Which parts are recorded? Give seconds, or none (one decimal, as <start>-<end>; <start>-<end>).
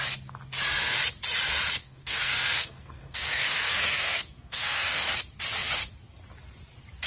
0.0-1.8; 5.1-7.1